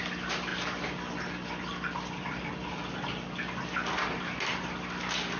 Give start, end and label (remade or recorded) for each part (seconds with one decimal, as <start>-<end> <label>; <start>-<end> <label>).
0.0-5.4 recorded